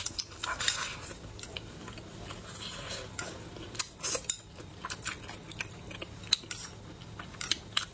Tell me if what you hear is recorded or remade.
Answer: recorded